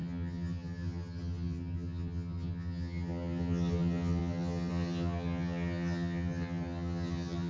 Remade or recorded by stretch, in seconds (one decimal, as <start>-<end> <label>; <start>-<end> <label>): 0.0-7.5 remade